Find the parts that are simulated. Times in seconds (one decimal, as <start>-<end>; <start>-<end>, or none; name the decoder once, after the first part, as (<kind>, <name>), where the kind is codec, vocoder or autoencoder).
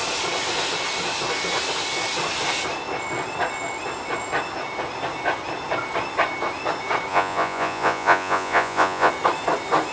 7.1-9.1 (vocoder, Vocos)